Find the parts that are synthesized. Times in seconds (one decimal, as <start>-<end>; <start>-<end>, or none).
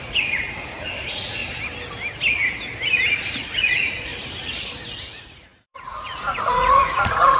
0.0-1.4; 3.1-4.1; 4.8-7.4